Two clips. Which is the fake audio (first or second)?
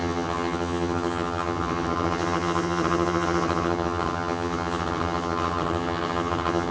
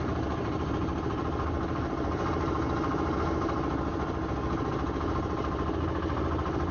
first